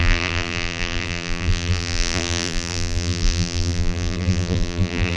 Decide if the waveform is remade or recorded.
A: remade